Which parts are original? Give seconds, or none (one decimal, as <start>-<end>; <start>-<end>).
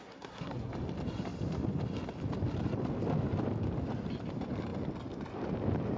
0.7-6.0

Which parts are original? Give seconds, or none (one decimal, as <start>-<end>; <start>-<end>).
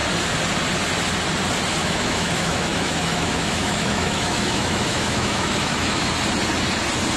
0.0-1.8; 6.1-7.2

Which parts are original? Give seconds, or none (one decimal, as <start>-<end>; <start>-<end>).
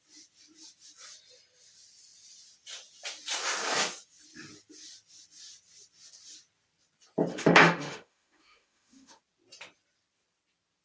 0.0-7.3; 9.2-10.8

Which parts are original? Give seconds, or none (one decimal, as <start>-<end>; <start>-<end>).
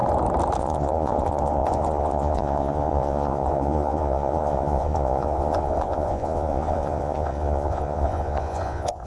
0.0-0.6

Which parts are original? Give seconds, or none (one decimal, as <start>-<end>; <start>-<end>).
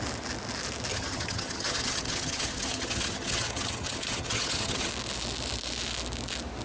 0.0-0.9; 4.9-6.6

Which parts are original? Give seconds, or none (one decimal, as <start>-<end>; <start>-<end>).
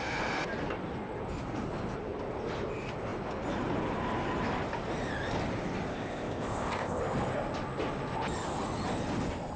0.0-5.9; 7.0-9.6